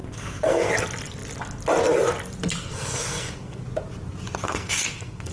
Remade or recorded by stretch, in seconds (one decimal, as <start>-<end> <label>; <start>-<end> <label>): 0.0-0.7 remade; 0.7-2.6 recorded; 2.6-3.6 remade; 3.6-4.4 recorded; 4.4-5.3 remade